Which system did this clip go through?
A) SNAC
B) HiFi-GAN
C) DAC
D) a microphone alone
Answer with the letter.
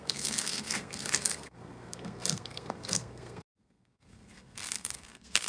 A